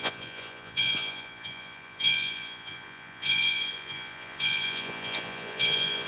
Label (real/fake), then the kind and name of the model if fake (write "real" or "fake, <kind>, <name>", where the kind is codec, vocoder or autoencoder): fake, vocoder, Vocos